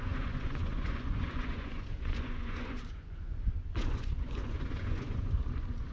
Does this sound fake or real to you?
fake